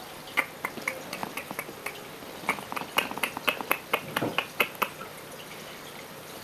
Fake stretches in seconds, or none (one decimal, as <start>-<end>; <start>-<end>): none

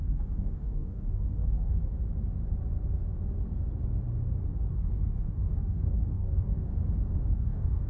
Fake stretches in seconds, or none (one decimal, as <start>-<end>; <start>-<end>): 0.0-1.8; 4.7-6.7; 7.3-7.9

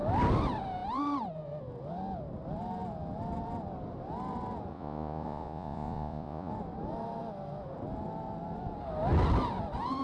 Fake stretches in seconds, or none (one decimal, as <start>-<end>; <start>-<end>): 4.7-6.5

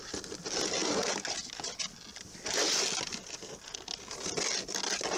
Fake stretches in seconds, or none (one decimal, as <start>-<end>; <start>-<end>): none

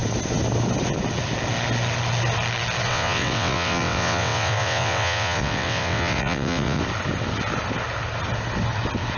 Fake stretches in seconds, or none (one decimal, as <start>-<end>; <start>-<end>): 2.9-6.8

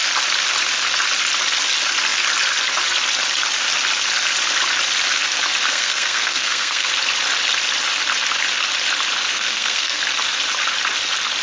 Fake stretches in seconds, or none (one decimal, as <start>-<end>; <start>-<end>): 5.7-6.9; 9.3-10.0

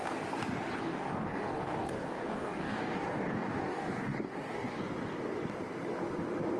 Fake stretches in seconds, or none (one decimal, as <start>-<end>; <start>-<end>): 0.8-4.8